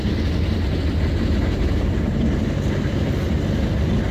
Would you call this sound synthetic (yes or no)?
no